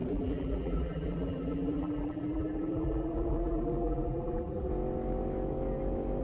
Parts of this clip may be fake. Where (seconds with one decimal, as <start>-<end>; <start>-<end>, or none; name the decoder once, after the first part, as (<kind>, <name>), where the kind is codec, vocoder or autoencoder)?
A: 0.0-4.7 (vocoder, BigVGAN v2)